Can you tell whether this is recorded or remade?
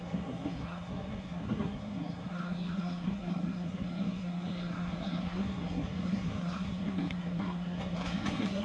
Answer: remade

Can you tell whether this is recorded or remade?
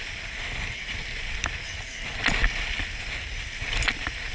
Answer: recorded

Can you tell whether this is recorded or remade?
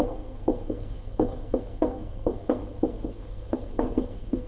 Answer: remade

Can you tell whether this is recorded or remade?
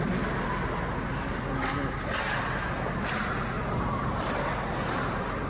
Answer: recorded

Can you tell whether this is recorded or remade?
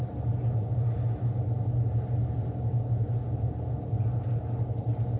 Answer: recorded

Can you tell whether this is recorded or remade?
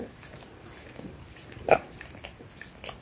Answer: recorded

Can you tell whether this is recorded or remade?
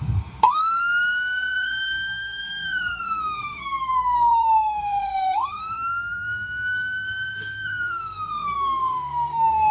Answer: remade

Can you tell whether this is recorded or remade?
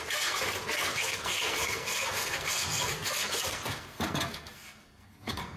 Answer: remade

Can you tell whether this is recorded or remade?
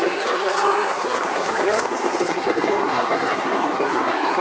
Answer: remade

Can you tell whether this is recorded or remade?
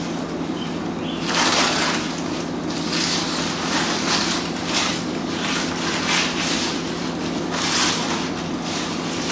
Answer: recorded